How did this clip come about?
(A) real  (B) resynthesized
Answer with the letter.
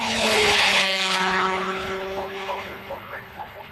B